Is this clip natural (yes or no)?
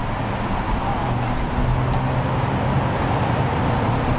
yes